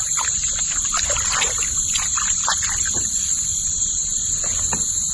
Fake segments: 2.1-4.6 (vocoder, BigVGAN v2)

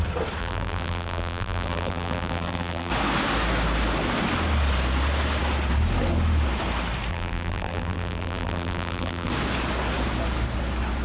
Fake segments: 0.4-2.9 (vocoder, BigVGAN v2); 7.1-9.3

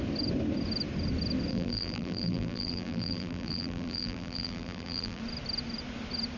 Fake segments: 1.5-5.2 (vocoder, BigVGAN v2)

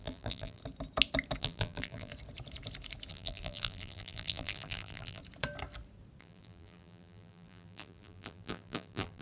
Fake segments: 0.0-0.6 (vocoder, BigVGAN v2); 1.4-2.1; 3.1-5.2; 6.2-9.2

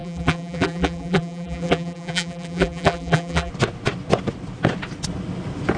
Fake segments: 0.0-3.5 (vocoder, BigVGAN v2)